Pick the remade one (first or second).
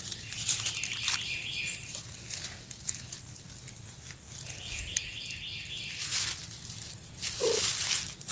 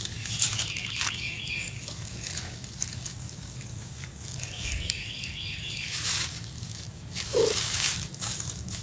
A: second